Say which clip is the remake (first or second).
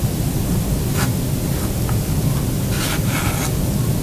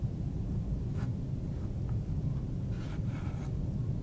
second